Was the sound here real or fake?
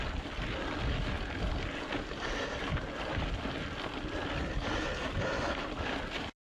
real